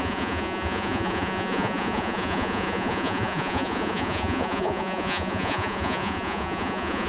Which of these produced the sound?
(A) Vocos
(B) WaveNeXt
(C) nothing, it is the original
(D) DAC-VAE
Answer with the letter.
A